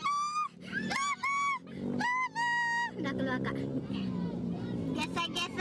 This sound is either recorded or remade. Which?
recorded